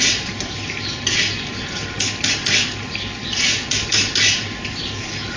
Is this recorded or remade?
recorded